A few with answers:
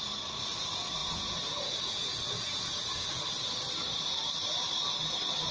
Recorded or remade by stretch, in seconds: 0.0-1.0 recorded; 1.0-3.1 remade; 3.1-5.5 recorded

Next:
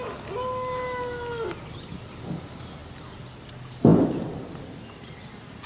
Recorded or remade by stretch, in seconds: 0.0-5.7 recorded

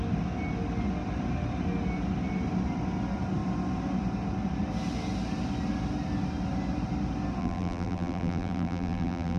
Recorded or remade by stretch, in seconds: 0.0-7.4 recorded; 7.4-9.4 remade